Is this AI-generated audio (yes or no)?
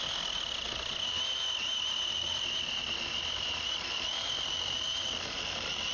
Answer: no